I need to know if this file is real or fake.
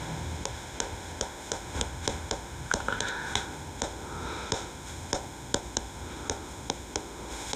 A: fake